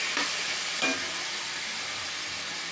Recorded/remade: recorded